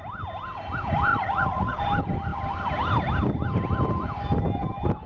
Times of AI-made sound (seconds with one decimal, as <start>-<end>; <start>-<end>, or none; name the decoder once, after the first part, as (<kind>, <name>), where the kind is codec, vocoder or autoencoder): 1.1-1.8 (vocoder, Vocos)